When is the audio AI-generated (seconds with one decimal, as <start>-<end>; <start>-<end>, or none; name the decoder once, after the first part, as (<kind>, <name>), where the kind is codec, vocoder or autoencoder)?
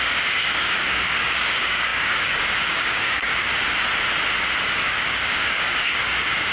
0.0-3.5 (codec, DAC); 4.6-6.5